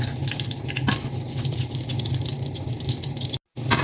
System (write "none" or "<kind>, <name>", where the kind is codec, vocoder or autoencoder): none